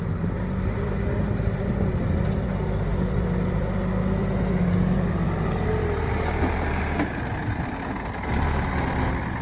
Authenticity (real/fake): real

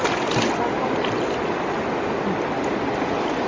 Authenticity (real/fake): real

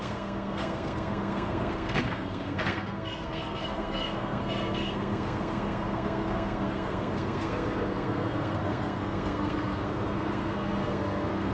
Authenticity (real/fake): fake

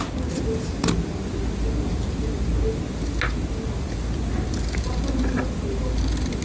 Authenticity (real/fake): real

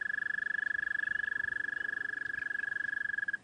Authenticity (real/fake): real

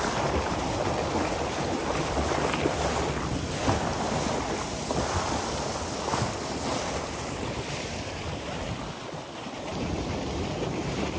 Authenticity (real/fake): real